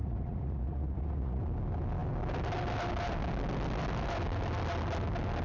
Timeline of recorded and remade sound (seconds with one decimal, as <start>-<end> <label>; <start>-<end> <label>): 0.0-1.4 remade; 1.4-5.4 recorded